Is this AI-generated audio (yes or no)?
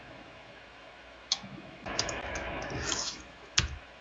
yes